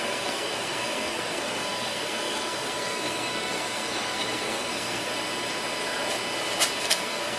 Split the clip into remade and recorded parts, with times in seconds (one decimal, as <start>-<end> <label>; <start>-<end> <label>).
0.0-5.1 remade; 5.1-6.8 recorded; 6.8-7.4 remade